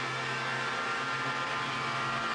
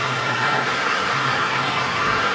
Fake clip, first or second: second